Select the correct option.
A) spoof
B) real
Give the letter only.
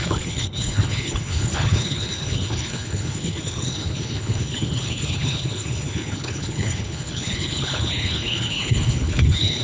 A